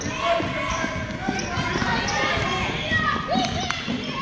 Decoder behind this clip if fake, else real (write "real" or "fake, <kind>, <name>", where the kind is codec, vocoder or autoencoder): real